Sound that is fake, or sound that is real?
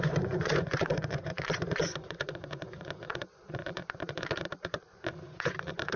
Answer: fake